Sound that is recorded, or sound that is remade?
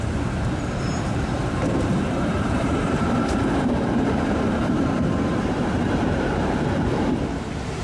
remade